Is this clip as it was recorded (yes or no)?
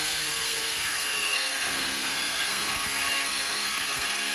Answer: no